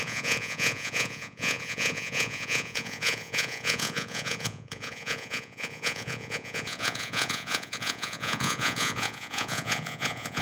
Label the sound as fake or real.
fake